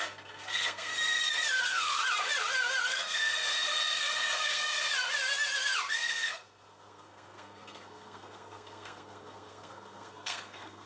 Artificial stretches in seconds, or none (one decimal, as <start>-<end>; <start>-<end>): 0.0-0.9; 1.6-2.0; 2.8-4.8; 5.9-10.9